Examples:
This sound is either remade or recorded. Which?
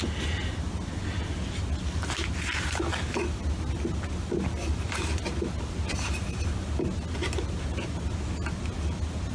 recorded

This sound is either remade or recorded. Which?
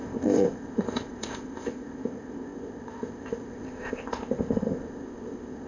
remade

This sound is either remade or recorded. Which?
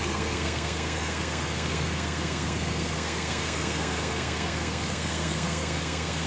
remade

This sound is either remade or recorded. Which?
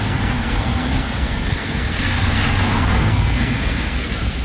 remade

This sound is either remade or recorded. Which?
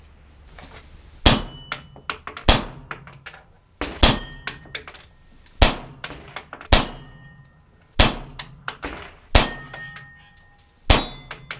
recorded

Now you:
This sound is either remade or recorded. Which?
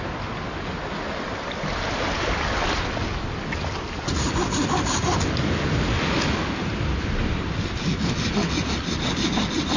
recorded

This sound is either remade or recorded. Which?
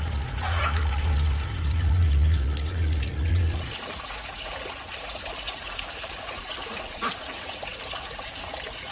remade